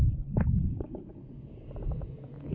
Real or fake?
fake